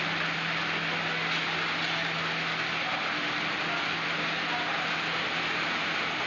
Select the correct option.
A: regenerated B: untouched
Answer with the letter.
B